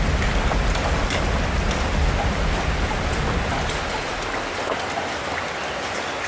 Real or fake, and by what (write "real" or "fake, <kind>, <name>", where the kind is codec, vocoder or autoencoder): real